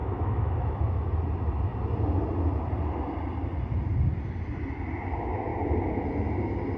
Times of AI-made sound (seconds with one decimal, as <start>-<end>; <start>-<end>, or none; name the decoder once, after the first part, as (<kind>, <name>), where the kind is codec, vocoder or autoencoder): 0.0-1.1 (autoencoder, DAC-VAE)